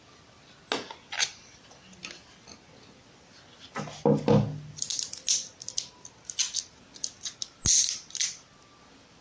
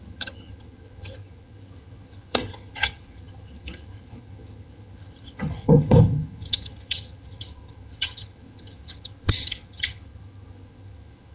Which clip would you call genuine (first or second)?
first